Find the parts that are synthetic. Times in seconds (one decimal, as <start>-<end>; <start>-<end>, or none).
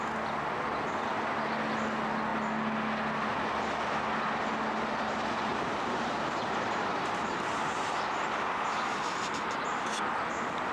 5.5-7.9